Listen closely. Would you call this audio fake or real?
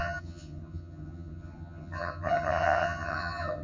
fake